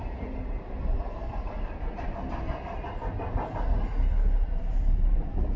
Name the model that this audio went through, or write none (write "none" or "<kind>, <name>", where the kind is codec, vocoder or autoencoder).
none